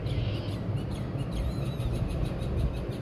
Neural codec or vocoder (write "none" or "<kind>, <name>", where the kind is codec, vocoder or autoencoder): none